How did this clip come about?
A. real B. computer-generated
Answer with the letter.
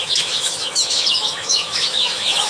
B